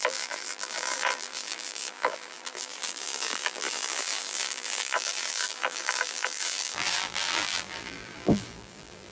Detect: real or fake fake